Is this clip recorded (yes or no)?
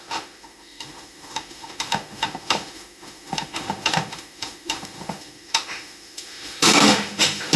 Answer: no